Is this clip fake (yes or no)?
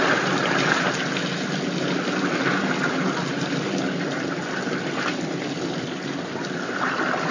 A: no